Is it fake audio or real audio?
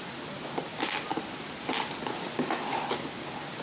real